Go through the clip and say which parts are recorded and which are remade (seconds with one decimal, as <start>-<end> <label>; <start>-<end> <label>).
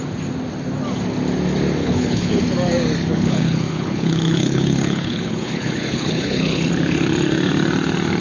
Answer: 0.0-1.8 recorded; 1.8-2.4 remade; 2.4-3.1 recorded; 3.1-6.7 remade; 6.7-8.2 recorded